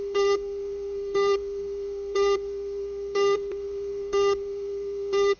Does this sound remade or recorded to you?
remade